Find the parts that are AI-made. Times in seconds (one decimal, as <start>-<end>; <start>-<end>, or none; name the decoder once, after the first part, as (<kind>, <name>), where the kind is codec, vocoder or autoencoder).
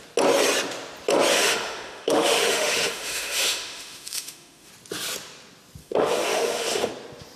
1.3-4.7 (autoencoder, DAC-VAE); 5.8-6.9